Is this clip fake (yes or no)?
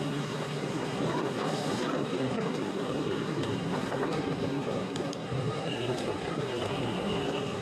yes